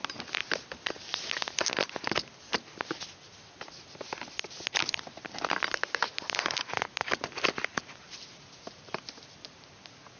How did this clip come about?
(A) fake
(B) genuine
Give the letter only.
B